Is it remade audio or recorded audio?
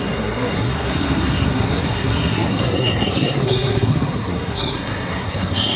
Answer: remade